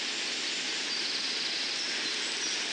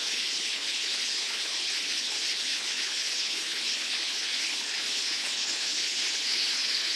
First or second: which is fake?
second